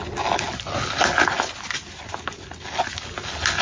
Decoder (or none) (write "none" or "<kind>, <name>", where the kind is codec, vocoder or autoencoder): none